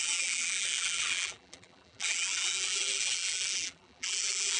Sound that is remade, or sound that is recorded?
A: remade